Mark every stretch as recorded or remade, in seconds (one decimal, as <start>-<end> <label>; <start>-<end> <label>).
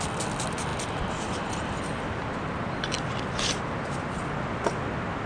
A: 0.0-5.3 recorded